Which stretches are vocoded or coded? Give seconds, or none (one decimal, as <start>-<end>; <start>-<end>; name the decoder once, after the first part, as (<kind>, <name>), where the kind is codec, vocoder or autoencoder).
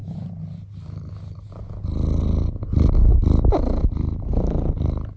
none